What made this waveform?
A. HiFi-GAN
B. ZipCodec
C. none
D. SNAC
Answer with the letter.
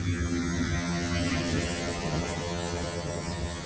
A